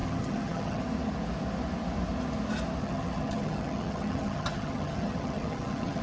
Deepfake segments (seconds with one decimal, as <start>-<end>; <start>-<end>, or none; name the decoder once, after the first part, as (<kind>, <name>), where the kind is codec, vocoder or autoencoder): 0.0-0.8 (vocoder, HiFi-GAN); 2.8-6.0